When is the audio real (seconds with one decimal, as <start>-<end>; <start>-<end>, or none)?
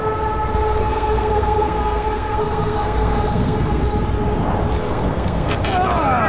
0.0-0.8; 3.8-4.8; 5.5-6.3